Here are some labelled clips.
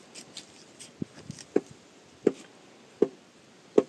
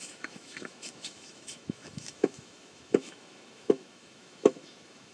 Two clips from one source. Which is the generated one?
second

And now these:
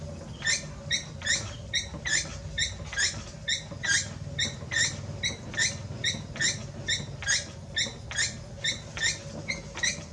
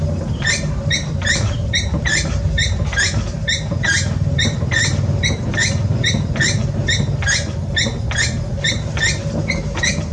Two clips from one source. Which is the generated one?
second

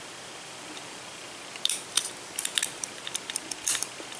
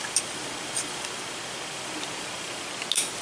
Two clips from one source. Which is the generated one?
first